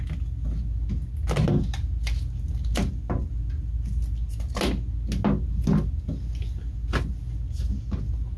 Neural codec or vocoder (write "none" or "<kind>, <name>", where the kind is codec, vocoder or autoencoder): none